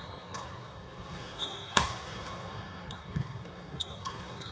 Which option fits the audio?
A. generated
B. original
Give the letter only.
A